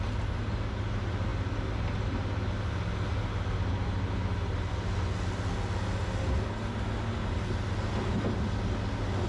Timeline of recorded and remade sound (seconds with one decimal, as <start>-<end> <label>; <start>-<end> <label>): 0.0-9.3 recorded